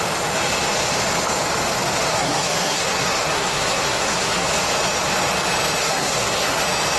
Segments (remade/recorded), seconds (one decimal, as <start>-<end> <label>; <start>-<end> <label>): 0.0-2.1 recorded; 2.1-4.5 remade; 4.5-5.8 recorded; 5.8-6.6 remade; 6.6-7.0 recorded